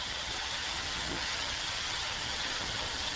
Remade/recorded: remade